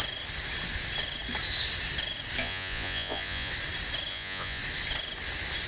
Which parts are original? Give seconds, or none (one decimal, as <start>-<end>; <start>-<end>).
0.0-2.4; 3.5-4.1; 4.6-5.7